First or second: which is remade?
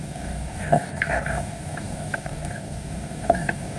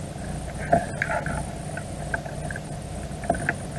first